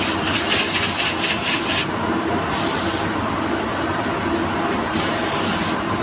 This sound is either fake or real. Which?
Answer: real